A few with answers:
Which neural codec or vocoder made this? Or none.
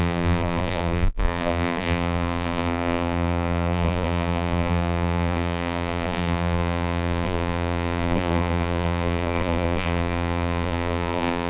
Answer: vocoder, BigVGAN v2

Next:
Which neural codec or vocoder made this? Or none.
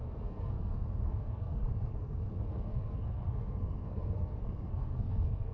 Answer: codec, SNAC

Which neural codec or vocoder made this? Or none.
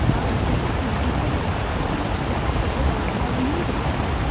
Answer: vocoder, BigVGAN v2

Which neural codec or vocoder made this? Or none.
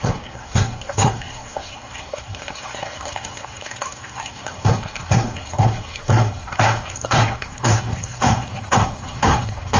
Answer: codec, SNAC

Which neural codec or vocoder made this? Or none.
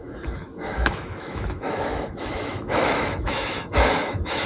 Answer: autoencoder, DAC-VAE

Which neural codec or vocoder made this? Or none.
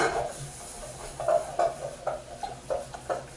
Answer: none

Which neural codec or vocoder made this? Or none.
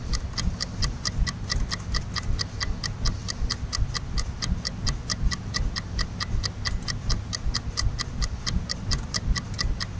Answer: none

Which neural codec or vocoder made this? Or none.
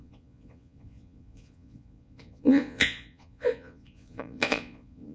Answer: vocoder, Vocos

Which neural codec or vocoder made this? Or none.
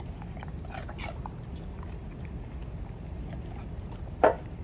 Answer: none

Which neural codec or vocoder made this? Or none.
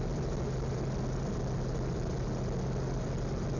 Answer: none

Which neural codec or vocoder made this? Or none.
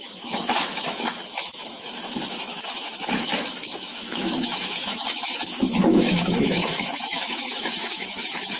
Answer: autoencoder, DAC-VAE